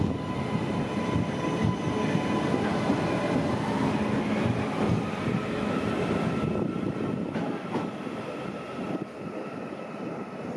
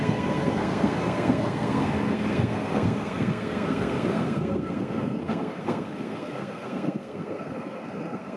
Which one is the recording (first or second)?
first